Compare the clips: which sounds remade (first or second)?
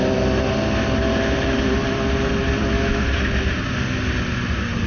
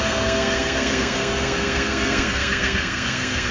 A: second